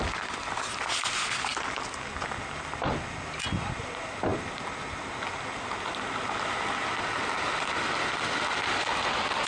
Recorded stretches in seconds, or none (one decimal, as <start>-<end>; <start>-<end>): 0.0-9.5